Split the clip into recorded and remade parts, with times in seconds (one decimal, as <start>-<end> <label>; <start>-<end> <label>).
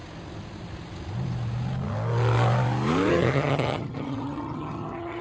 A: 0.0-3.1 recorded; 3.1-5.2 remade